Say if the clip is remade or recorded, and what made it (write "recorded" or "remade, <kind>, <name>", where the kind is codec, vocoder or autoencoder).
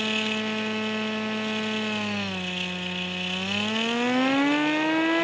recorded